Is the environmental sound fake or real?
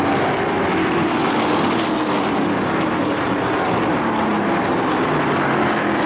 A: real